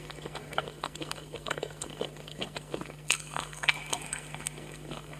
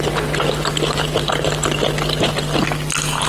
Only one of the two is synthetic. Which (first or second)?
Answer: first